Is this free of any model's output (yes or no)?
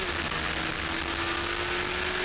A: yes